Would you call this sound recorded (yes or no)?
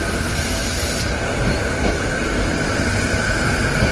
yes